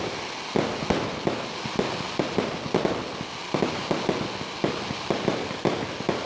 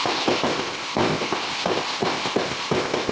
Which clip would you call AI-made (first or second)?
second